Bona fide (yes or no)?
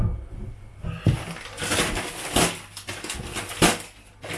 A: yes